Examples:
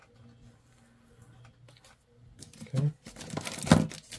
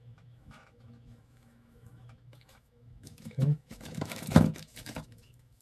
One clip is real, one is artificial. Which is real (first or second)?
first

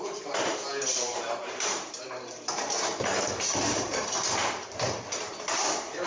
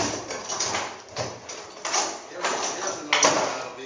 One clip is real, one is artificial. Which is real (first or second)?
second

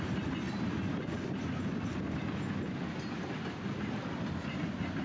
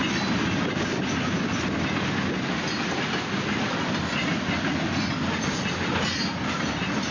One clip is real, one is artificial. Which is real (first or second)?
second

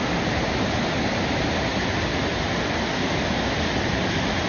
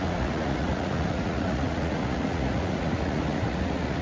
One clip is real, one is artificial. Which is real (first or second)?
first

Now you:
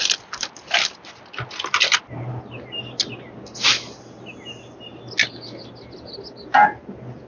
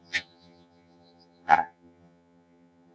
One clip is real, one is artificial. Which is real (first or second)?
first